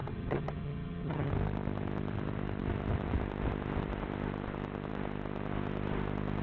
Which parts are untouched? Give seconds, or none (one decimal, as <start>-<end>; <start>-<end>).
1.3-6.4